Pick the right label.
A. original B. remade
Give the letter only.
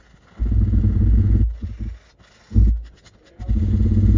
A